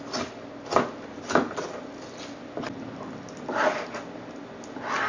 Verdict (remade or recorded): recorded